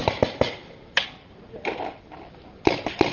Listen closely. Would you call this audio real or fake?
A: real